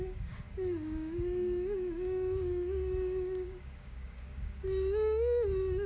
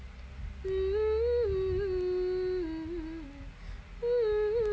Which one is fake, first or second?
first